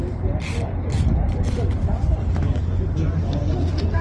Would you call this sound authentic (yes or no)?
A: yes